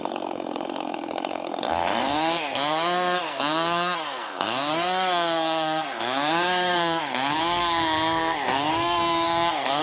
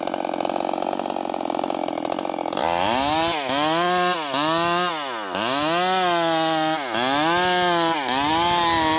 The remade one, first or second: first